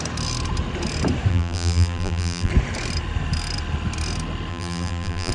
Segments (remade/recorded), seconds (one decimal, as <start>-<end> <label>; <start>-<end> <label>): 0.0-1.3 recorded; 1.3-2.5 remade; 2.5-4.5 recorded; 4.5-5.3 remade